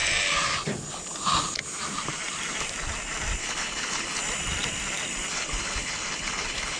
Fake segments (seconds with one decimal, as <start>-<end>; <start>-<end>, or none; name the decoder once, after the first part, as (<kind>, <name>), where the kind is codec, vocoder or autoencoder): 3.4-4.2 (codec, HILCodec); 5.3-6.8